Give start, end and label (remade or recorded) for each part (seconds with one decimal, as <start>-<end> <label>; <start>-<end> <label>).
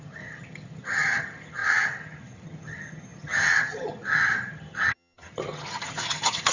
0.0-6.5 remade